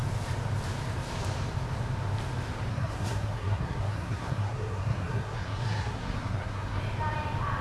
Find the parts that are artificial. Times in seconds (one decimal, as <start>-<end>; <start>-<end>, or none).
2.7-6.8

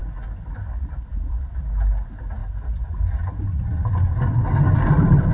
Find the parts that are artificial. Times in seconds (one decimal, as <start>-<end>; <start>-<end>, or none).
0.0-1.6

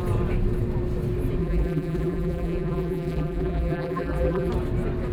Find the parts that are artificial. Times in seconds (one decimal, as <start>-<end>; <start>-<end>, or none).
1.4-4.5

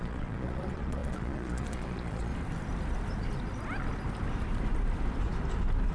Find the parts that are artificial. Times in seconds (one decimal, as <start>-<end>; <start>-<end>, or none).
0.0-2.3